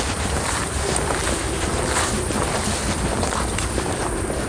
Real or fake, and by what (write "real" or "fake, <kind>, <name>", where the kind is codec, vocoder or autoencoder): real